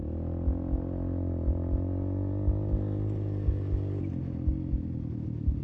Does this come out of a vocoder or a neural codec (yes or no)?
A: no